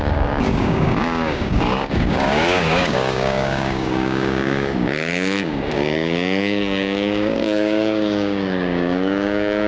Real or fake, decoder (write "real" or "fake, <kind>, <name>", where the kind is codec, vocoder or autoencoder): fake, codec, DAC